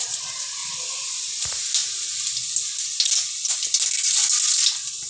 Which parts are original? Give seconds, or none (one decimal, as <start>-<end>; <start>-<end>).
1.8-5.1